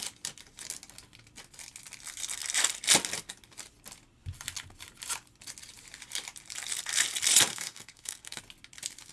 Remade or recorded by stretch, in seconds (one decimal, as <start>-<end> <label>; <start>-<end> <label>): 0.0-7.5 recorded; 7.5-8.4 remade; 8.4-9.1 recorded